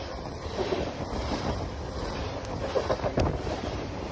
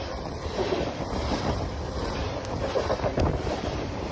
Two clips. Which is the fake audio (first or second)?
second